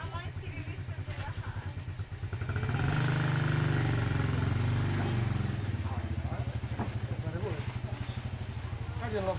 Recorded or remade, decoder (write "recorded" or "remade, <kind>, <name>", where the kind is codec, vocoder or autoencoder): recorded